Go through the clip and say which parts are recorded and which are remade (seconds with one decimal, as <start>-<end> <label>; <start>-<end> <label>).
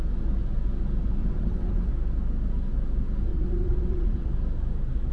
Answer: 0.0-1.2 recorded; 1.2-1.9 remade; 1.9-3.3 recorded; 3.3-4.3 remade; 4.3-5.1 recorded